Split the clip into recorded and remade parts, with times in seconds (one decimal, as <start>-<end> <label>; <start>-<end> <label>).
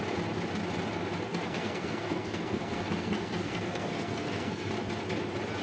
0.0-1.3 recorded; 1.3-4.7 remade; 4.7-5.6 recorded